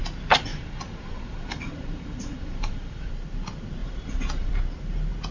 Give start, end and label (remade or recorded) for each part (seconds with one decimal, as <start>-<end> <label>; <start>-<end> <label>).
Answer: 0.0-0.5 recorded; 0.5-3.1 remade; 3.1-3.8 recorded; 3.8-4.5 remade; 4.5-5.3 recorded